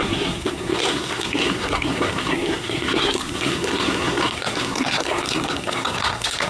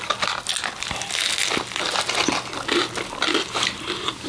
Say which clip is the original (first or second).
second